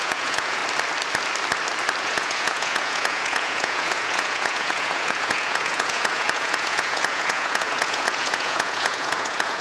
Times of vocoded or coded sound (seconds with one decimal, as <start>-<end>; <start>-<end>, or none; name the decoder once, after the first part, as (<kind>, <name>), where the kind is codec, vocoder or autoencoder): 0.0-0.6 (vocoder, Vocos); 2.0-9.6